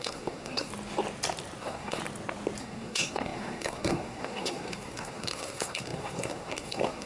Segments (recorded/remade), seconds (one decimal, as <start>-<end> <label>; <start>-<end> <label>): 0.0-0.7 remade; 0.7-1.6 recorded; 1.6-2.0 remade; 2.0-2.6 recorded; 2.6-7.1 remade